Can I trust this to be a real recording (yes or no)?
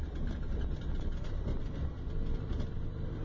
yes